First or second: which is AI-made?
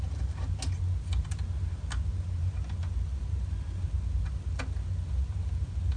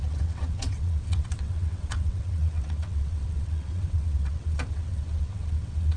second